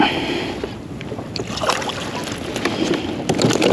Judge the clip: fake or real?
real